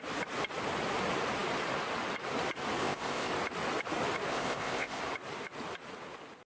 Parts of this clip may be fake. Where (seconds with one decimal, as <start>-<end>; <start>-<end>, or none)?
2.8-3.3; 4.3-5.0